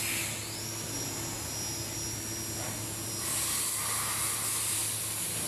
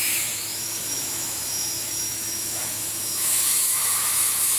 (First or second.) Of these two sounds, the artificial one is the second